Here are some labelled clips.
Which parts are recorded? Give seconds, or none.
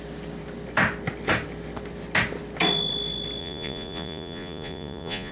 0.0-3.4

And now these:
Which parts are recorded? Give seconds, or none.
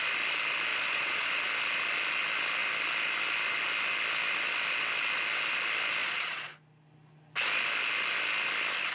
0.0-0.7; 1.3-6.0; 6.5-8.9